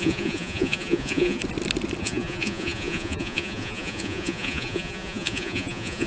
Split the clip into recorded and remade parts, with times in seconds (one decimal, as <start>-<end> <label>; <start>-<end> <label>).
0.0-1.4 remade; 1.4-2.0 recorded; 2.0-6.1 remade